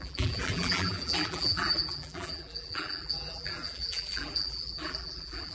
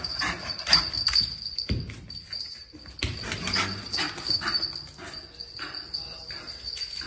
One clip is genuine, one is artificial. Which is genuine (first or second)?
second